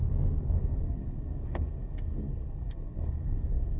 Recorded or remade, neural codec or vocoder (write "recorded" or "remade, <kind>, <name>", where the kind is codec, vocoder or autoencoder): remade, codec, SNAC